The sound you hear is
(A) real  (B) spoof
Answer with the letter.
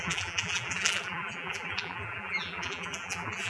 B